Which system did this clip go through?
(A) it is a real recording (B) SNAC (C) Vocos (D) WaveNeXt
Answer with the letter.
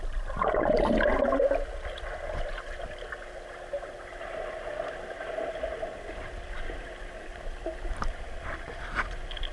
A